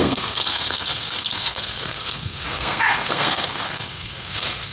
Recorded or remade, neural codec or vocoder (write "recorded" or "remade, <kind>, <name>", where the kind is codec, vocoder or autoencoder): remade, codec, SNAC